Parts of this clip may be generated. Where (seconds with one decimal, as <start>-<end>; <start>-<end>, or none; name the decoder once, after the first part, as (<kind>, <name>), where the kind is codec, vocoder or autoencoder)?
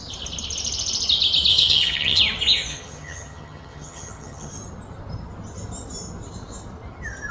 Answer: 1.5-2.2 (vocoder, HiFi-GAN); 2.7-4.5